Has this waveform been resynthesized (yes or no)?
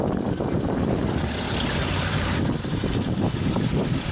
yes